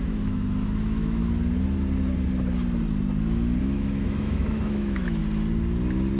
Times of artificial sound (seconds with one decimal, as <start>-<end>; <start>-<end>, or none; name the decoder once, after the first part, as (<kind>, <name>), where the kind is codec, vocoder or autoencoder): 0.0-1.2 (autoencoder, DAC-VAE); 3.6-5.2